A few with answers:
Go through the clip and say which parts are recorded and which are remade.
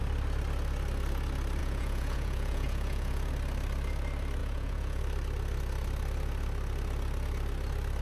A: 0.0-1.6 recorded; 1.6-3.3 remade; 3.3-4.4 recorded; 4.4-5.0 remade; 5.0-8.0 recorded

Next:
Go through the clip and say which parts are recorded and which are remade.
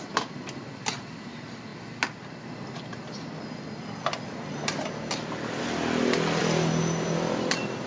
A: 0.0-7.9 recorded